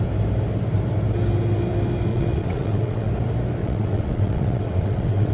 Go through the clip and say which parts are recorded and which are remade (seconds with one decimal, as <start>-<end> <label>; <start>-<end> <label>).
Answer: 0.0-2.1 recorded; 2.1-3.1 remade; 3.1-3.6 recorded; 3.6-5.3 remade